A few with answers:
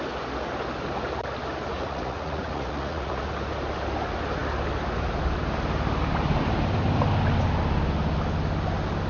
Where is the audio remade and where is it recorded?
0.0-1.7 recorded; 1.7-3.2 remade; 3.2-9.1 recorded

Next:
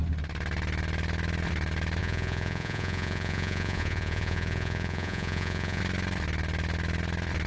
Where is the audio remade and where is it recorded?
0.0-2.0 recorded; 2.0-5.8 remade; 5.8-7.5 recorded

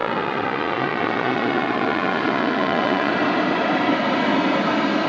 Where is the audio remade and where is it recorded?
0.0-3.1 remade; 3.1-5.1 recorded

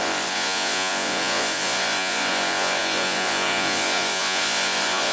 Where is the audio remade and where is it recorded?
0.0-5.1 remade

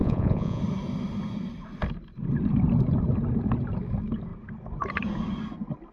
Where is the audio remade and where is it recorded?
0.0-0.6 remade; 0.6-5.9 recorded

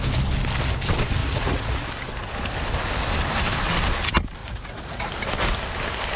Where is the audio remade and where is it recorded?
0.0-1.2 recorded; 1.2-1.8 remade; 1.8-4.4 recorded; 4.4-5.1 remade; 5.1-6.2 recorded